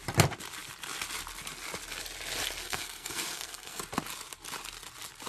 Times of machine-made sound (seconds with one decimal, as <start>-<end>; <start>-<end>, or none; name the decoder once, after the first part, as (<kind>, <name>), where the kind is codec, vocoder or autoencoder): 2.6-3.8 (codec, SNAC)